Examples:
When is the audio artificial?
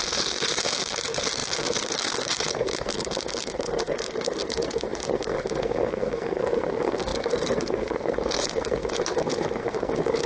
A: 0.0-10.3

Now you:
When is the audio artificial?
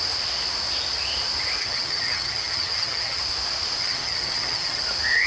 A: 1.6-3.2; 3.8-4.8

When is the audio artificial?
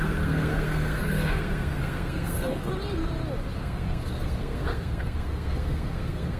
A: 0.0-2.7; 3.5-6.4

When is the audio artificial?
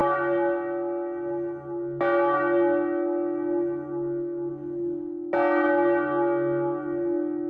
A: none